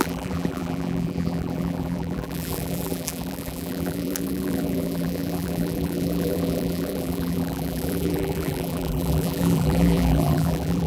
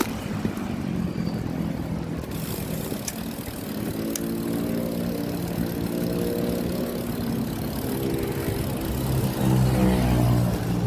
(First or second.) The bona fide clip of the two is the second